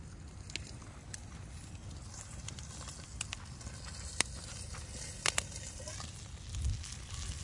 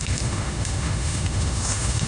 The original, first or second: first